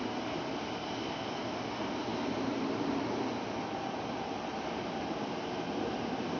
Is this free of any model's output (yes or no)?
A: yes